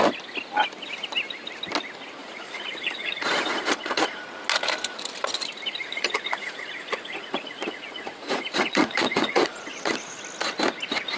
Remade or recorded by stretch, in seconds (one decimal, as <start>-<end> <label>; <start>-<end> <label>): 0.0-2.2 recorded; 2.2-4.2 remade; 4.2-5.8 recorded; 5.8-10.2 remade; 10.2-11.2 recorded